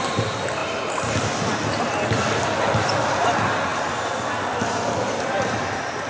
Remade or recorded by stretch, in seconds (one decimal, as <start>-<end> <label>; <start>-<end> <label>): 0.0-6.1 recorded